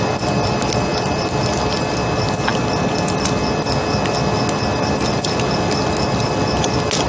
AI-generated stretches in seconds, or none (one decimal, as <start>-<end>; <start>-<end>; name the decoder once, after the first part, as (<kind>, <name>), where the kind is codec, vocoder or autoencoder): none